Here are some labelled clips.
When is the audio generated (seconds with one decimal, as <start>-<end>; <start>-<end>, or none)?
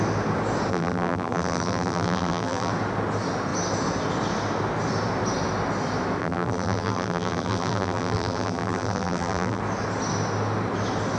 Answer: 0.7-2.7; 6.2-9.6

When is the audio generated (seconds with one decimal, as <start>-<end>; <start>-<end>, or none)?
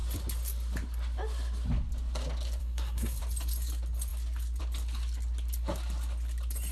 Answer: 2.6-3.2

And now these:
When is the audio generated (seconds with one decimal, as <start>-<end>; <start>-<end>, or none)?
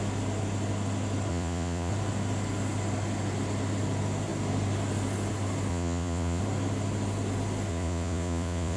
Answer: 1.3-1.9; 5.7-6.4; 7.7-8.8